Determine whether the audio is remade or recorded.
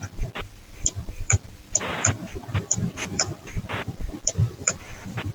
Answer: remade